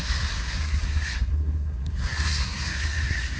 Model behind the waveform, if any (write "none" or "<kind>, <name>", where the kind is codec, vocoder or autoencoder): codec, SNAC